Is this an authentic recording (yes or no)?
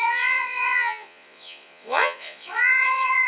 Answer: no